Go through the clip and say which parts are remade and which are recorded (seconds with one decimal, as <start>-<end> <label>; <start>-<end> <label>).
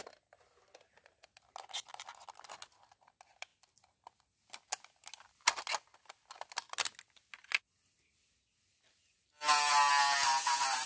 0.0-10.9 recorded